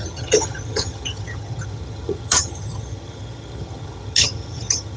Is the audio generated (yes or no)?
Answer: yes